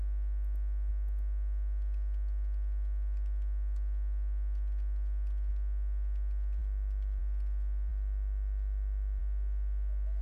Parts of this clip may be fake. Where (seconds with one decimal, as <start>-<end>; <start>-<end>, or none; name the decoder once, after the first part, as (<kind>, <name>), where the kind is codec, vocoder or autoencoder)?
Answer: none

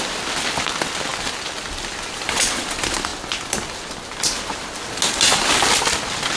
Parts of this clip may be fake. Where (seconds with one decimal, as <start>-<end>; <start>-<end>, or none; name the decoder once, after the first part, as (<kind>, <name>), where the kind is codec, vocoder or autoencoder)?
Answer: none

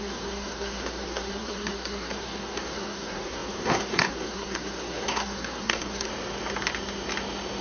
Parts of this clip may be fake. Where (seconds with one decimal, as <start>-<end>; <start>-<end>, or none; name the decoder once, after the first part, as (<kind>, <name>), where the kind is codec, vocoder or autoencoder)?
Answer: 0.0-6.1 (codec, SNAC)

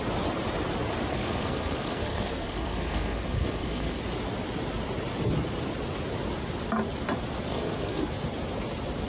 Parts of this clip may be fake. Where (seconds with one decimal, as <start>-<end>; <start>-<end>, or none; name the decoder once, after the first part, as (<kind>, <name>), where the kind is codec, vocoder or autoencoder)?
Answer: 1.1-4.0 (codec, SNAC); 7.5-8.0